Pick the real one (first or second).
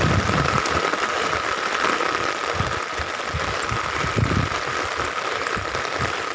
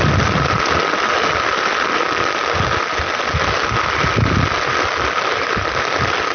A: second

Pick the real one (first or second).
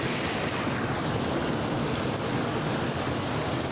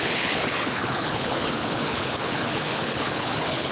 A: first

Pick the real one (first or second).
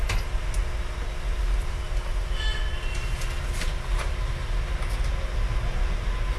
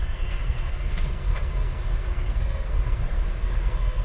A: first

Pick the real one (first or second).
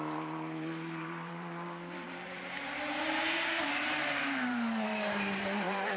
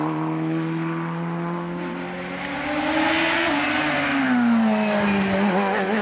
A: second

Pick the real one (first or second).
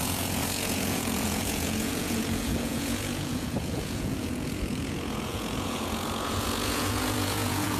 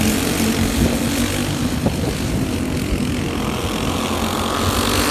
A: second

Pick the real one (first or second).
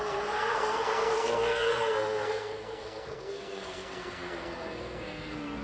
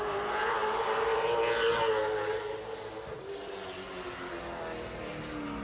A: second